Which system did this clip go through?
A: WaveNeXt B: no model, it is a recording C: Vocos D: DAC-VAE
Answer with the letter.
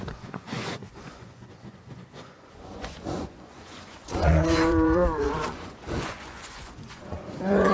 C